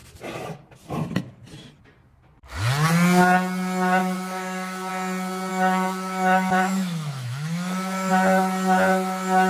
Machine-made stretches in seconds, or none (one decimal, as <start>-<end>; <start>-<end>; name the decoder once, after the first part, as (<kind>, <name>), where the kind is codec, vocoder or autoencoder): 4.0-4.9 (autoencoder, DAC-VAE); 5.5-8.1